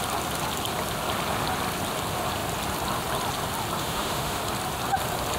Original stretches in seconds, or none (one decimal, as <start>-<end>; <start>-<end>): 0.0-3.8; 4.4-5.4